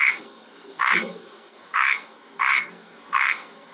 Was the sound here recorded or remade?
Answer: remade